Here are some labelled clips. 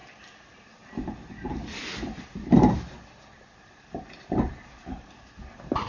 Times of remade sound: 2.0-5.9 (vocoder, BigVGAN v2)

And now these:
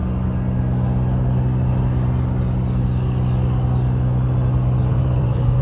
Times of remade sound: 4.9-5.6 (vocoder, BigVGAN v2)

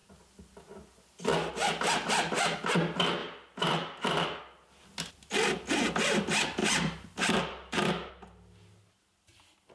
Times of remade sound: 3.2-4.4 (vocoder, BigVGAN v2); 6.6-8.1